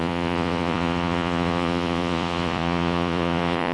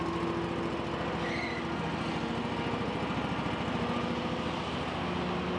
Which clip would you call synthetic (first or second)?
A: first